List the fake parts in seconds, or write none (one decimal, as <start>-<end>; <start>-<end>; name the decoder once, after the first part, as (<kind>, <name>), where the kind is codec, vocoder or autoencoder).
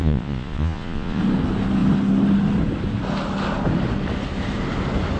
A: 0.0-1.2 (vocoder, Vocos)